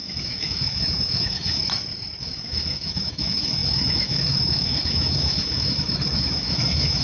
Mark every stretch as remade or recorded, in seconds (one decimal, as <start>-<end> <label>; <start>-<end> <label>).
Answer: 0.0-1.6 remade; 1.6-2.2 recorded; 2.2-7.0 remade